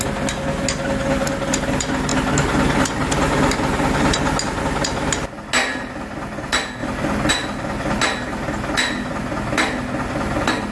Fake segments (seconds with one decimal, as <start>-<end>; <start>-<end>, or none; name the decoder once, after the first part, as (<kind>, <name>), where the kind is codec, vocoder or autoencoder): none